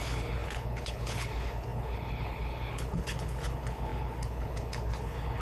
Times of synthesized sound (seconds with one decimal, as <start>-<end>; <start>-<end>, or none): 0.0-5.4